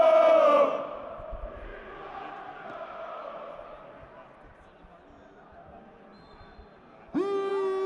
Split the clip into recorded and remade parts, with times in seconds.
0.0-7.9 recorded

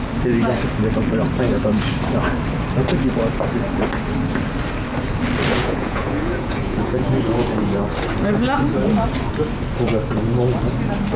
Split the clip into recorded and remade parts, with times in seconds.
0.0-5.5 recorded; 5.5-7.8 remade; 7.8-11.2 recorded

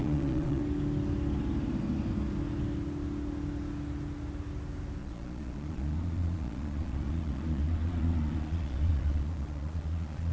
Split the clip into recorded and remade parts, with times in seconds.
0.0-0.6 remade; 0.6-5.0 recorded; 5.0-10.3 remade

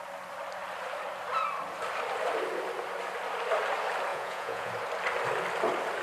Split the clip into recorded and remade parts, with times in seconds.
0.0-4.1 recorded; 4.1-4.7 remade; 4.7-6.0 recorded

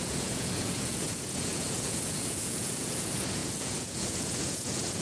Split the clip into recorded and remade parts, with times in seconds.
0.0-5.0 remade